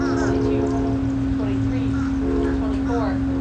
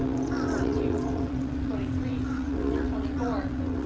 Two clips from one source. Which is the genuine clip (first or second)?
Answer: first